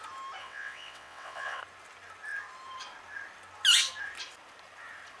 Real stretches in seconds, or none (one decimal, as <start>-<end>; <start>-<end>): 0.0-0.4; 1.6-5.2